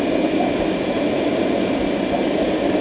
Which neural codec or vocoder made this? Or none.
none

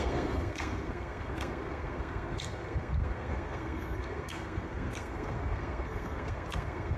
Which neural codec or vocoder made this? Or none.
codec, SNAC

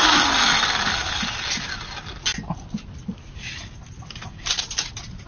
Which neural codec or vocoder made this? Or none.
none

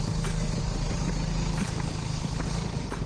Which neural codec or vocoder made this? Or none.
none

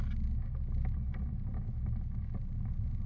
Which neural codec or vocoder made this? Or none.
none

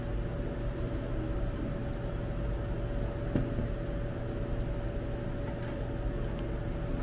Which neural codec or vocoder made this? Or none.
none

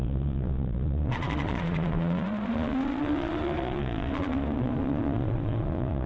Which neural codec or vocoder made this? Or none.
vocoder, Vocos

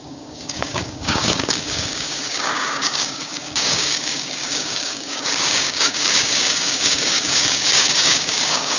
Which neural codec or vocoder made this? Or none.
codec, DAC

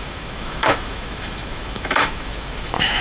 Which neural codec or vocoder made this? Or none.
autoencoder, DAC-VAE